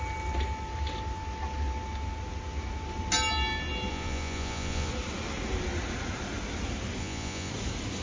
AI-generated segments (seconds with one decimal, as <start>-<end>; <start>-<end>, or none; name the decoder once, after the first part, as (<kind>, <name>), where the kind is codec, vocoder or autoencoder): 3.9-4.9 (vocoder, Vocos); 7.0-7.5